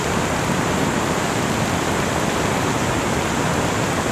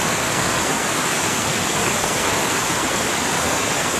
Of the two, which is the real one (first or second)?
first